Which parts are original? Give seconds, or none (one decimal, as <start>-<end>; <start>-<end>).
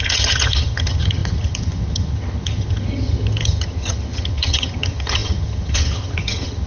none